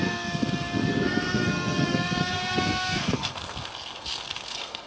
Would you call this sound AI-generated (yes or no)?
yes